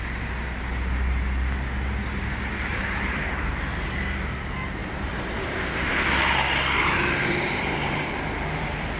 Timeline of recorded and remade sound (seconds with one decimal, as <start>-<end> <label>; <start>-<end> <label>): 0.0-2.7 recorded; 2.7-3.5 remade; 3.5-4.8 recorded; 4.8-5.7 remade; 5.7-6.8 recorded; 6.8-8.1 remade; 8.1-9.0 recorded